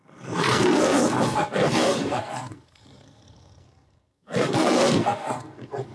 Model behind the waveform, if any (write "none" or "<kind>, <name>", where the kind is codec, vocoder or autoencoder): codec, SNAC